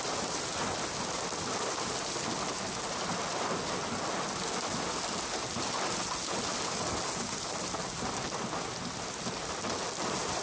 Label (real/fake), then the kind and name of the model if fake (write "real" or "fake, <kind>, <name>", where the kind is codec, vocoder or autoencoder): real